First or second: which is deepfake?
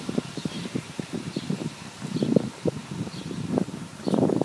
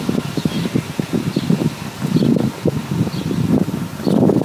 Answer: first